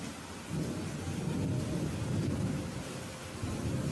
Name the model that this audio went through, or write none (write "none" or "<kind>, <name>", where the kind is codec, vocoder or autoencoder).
none